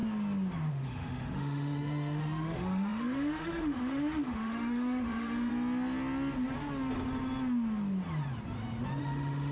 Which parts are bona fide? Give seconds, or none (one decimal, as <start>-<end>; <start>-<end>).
0.0-0.7; 5.5-9.0